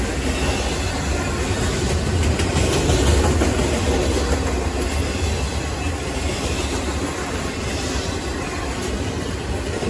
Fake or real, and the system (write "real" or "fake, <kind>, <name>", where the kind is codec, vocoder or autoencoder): real